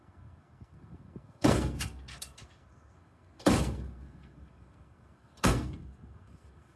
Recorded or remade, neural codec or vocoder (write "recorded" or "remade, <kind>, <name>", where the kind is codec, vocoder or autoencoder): remade, codec, SNAC